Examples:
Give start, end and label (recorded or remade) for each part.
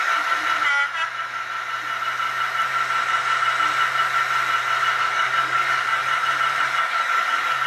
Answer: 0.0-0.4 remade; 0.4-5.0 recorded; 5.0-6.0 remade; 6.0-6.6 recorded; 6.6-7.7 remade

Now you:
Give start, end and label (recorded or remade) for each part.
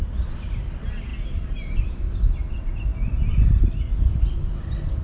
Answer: 0.0-5.0 recorded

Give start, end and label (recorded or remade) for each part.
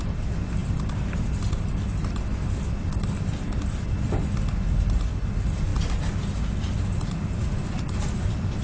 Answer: 0.0-8.6 recorded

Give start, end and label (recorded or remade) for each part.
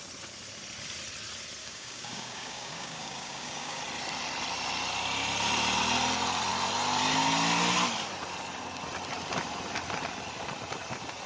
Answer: 0.0-1.6 recorded; 1.6-3.8 remade; 3.8-11.3 recorded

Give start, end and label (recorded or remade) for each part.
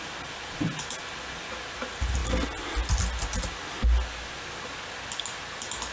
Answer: 0.0-5.9 recorded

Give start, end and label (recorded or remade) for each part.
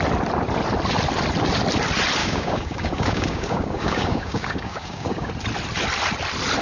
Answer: 0.0-2.2 recorded; 2.2-5.3 remade; 5.3-6.6 recorded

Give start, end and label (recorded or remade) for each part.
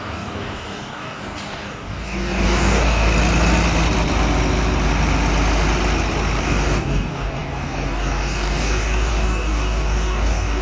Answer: 0.0-3.1 remade; 3.1-6.4 recorded; 6.4-10.6 remade